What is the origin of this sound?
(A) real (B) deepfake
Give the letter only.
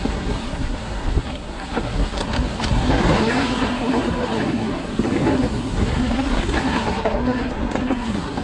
B